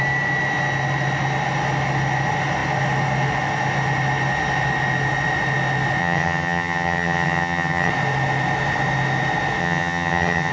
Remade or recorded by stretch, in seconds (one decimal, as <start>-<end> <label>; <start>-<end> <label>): 0.0-6.0 recorded; 6.0-7.9 remade; 7.9-9.6 recorded; 9.6-10.5 remade